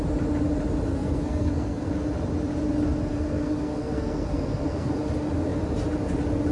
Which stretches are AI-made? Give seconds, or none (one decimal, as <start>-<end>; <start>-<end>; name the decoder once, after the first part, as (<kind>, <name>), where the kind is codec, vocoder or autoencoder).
0.9-1.9 (codec, SNAC); 3.1-4.9